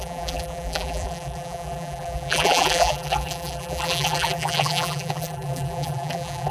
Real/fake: fake